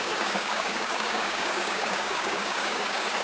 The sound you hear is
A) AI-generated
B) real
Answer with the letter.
A